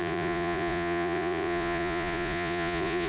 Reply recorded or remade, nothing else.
remade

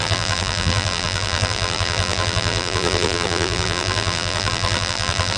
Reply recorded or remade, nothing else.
remade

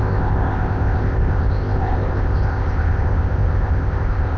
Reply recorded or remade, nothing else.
remade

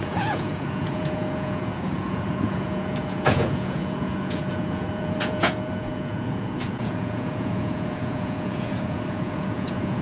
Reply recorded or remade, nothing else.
remade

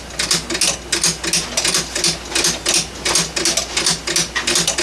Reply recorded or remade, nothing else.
recorded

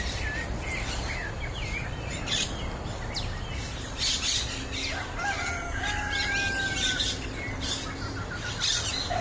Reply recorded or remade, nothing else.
recorded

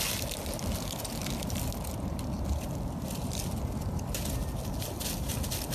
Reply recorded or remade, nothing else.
recorded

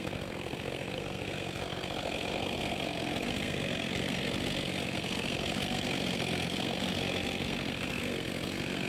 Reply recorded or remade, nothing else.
remade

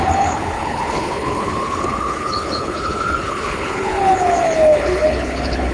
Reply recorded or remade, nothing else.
remade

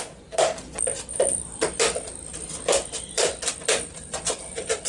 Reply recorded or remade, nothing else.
recorded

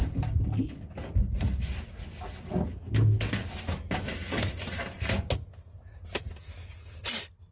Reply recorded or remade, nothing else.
recorded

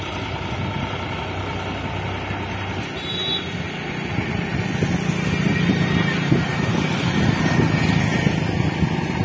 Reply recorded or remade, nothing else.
recorded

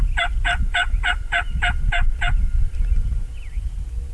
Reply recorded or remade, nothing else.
recorded